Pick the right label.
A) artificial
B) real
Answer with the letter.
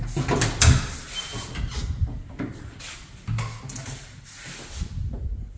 B